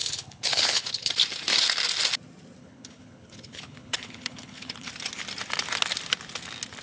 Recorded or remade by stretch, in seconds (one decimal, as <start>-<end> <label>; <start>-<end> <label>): 0.0-1.1 remade; 1.1-2.6 recorded; 2.6-4.9 remade; 4.9-6.8 recorded